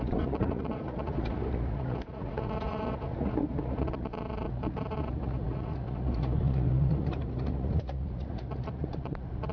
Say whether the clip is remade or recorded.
remade